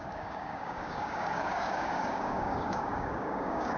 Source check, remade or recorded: remade